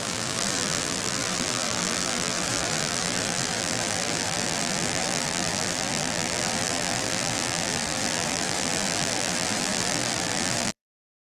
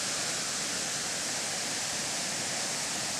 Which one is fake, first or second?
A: first